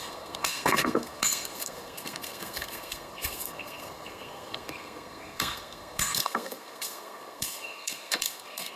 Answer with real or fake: fake